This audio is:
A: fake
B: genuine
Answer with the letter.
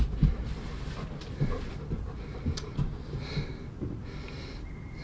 B